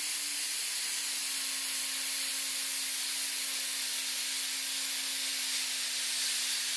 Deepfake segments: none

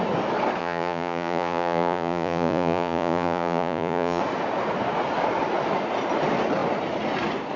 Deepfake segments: 0.6-4.2 (vocoder, Vocos)

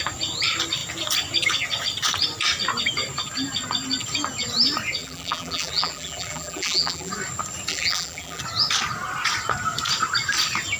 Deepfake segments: 5.0-7.1 (vocoder, BigVGAN v2); 7.7-8.4

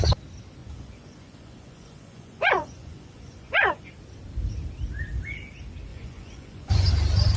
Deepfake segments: 0.6-3.9 (vocoder, Vocos); 5.9-6.9

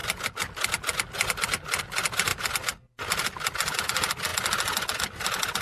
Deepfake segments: none

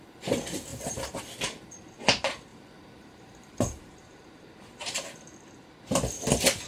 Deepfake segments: 0.7-1.2 (vocoder, BigVGAN v2); 2.5-5.2

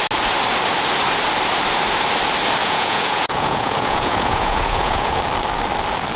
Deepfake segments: 2.6-5.2 (vocoder, Vocos)

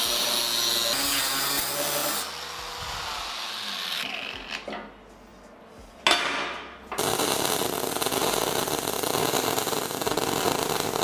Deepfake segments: none